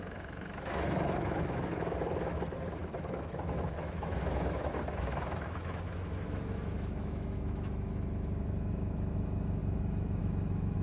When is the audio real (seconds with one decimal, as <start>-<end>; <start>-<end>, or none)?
none